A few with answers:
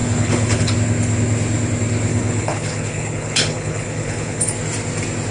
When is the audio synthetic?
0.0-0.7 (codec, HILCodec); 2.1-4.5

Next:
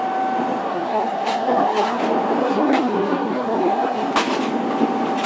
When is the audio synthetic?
0.6-2.0 (codec, SNAC); 2.4-4.1

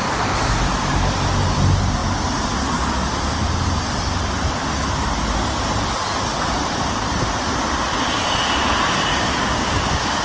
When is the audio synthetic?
9.1-10.2 (codec, DAC)

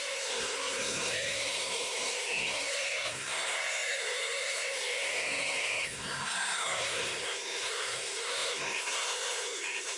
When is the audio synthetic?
0.0-10.0 (codec, SNAC)